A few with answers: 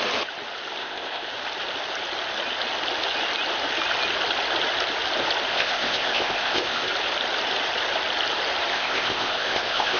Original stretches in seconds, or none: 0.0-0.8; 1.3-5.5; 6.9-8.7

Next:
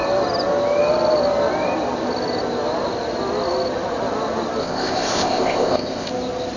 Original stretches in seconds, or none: 0.0-4.6; 6.1-6.6

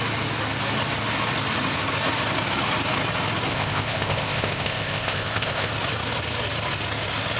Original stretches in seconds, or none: 0.0-3.5; 5.7-7.4

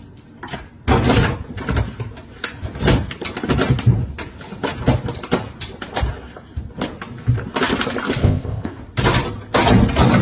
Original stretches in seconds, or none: 0.0-8.2; 8.8-10.2

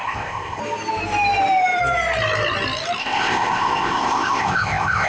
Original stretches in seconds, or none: 0.6-3.0

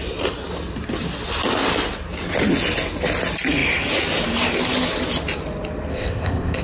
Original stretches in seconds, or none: 0.0-5.9

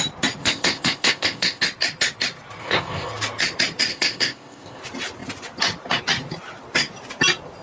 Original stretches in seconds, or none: 0.0-0.4; 1.6-2.6; 3.1-3.9; 4.8-7.6